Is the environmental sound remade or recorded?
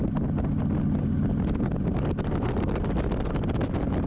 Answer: recorded